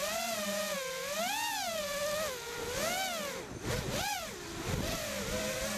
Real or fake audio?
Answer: real